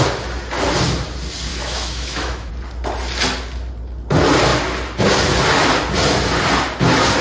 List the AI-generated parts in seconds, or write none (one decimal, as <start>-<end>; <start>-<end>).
1.5-2.5